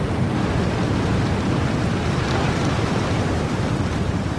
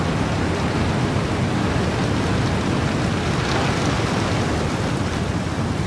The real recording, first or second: second